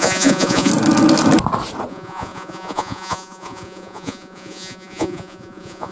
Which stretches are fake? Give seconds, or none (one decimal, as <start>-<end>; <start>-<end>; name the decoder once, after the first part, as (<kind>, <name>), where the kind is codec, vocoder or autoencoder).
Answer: 0.0-0.7 (vocoder, Vocos); 1.9-5.9